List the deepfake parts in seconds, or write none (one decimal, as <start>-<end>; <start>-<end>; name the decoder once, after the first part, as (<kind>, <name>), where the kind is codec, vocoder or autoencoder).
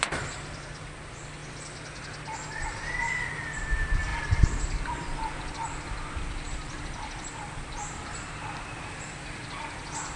0.0-1.4 (vocoder, BigVGAN v2); 3.0-4.1; 4.8-10.2